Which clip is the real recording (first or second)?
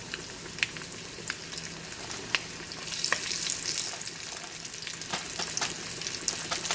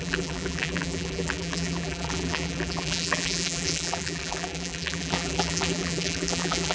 first